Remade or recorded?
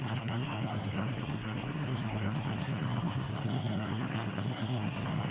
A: remade